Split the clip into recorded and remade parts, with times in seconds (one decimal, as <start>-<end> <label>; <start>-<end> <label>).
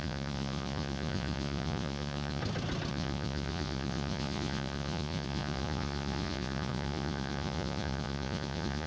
0.0-2.4 remade; 2.4-2.9 recorded; 2.9-8.9 remade